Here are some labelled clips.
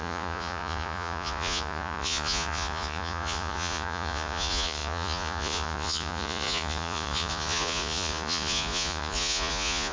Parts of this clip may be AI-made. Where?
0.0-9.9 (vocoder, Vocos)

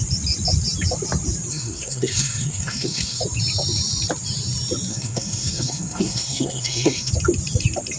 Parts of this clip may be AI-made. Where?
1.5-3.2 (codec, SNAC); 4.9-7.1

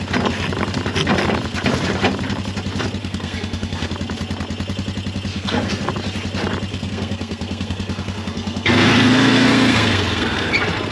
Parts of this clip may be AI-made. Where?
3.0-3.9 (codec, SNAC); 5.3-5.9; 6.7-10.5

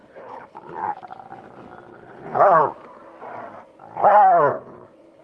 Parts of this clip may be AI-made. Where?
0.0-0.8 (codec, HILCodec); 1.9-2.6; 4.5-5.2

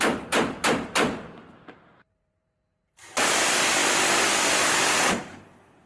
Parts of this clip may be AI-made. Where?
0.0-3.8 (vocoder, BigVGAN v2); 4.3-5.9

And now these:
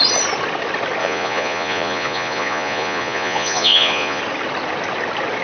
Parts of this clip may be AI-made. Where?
1.0-4.2 (vocoder, Vocos)

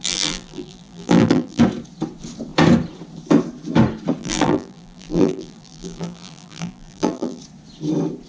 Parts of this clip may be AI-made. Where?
0.0-1.6 (vocoder, BigVGAN v2); 4.2-7.4

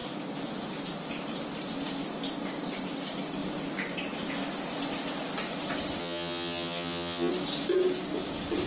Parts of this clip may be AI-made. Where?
6.0-7.3 (vocoder, HiFi-GAN)